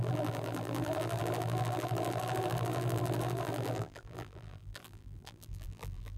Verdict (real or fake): fake